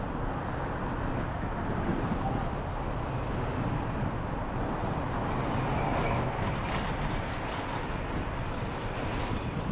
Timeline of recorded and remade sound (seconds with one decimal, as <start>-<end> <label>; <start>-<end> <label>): 0.0-4.4 recorded; 4.4-6.6 remade; 6.6-9.7 recorded